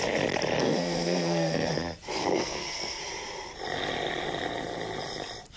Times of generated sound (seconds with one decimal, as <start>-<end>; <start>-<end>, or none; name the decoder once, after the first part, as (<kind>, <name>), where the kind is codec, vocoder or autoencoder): 0.6-1.7 (codec, SNAC); 2.2-3.0